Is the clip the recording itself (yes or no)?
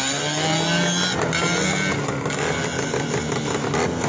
yes